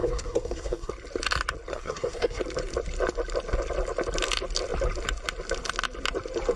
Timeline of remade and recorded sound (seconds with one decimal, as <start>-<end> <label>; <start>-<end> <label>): 0.0-0.9 remade; 0.9-1.7 recorded; 1.7-2.4 remade; 2.4-6.6 recorded